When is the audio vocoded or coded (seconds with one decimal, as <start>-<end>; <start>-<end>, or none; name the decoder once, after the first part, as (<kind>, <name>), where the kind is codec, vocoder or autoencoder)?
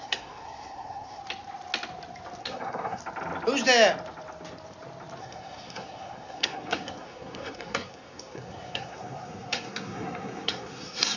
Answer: 0.0-1.2 (codec, SNAC); 2.4-3.0; 5.2-11.2